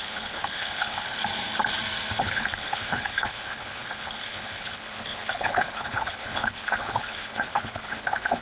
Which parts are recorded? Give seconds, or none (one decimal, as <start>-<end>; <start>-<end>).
1.2-2.2